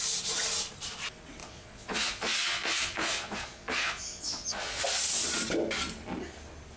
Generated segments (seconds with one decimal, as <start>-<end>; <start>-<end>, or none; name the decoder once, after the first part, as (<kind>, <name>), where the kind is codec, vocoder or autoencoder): 1.4-4.8 (vocoder, Vocos)

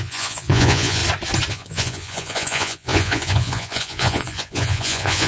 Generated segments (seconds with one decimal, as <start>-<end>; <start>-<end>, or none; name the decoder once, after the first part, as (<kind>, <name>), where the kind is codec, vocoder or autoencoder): 0.0-1.0 (vocoder, Vocos); 1.5-5.3

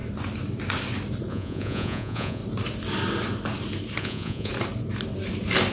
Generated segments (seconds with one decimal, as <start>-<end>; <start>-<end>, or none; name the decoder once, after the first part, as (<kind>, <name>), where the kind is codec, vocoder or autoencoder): 1.3-2.4 (vocoder, Vocos); 4.0-4.5

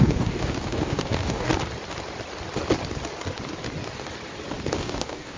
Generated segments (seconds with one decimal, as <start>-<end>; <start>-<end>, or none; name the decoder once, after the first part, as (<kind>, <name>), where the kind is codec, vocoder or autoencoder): 0.0-1.5 (codec, DAC); 4.7-5.4

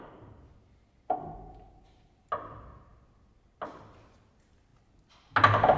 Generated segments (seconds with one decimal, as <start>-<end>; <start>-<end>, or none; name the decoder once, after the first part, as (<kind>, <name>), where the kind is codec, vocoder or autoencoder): none

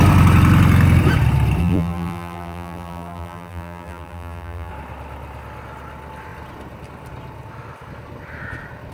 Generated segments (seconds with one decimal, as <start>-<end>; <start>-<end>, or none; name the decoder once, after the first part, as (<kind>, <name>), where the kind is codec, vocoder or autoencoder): 1.6-4.7 (vocoder, BigVGAN v2)

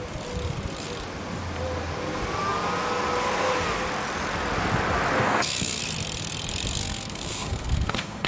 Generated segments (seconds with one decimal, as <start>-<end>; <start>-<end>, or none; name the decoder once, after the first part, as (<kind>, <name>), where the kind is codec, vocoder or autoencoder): 5.2-5.8 (codec, SNAC); 6.8-8.3

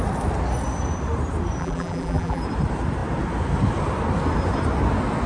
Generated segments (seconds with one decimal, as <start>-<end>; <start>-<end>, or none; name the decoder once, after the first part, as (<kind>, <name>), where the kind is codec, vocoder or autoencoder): 1.6-2.4 (vocoder, BigVGAN v2)